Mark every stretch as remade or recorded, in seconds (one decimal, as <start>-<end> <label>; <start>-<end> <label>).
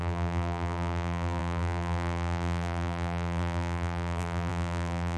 0.0-5.2 remade